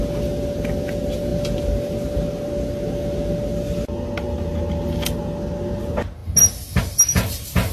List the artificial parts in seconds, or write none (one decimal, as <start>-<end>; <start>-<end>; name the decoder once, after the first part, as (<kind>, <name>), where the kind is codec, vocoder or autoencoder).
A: none